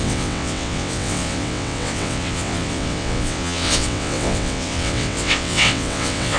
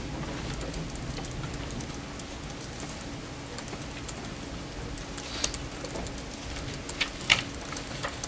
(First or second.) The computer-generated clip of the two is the first